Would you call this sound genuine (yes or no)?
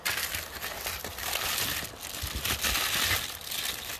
yes